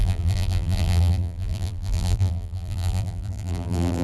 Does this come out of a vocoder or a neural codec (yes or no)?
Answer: yes